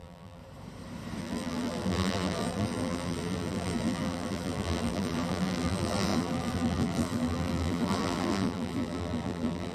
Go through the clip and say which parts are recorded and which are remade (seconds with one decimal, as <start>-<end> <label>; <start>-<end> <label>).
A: 0.0-0.4 remade; 0.4-1.2 recorded; 1.2-9.7 remade